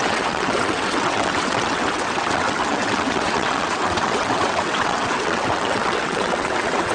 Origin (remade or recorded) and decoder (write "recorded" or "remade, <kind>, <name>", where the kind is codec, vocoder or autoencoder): remade, vocoder, WaveNeXt